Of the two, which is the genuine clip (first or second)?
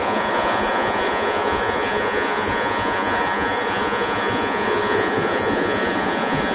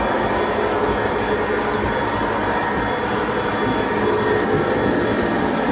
second